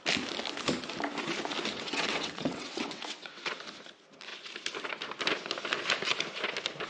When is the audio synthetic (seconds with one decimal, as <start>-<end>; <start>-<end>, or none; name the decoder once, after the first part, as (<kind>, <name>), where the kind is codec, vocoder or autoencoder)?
1.7-3.6 (vocoder, WaveNeXt)